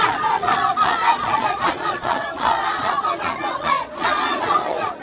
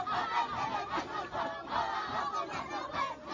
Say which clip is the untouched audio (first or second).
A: second